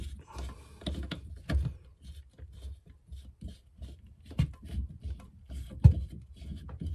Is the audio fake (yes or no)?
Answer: no